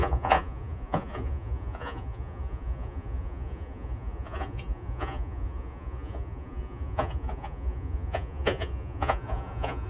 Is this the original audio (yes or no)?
no